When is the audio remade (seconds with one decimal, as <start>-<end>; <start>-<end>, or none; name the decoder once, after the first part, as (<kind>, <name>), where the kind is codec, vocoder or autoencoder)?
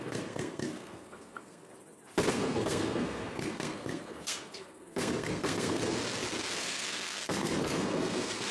0.0-1.7 (codec, SNAC); 2.3-6.0; 6.6-8.5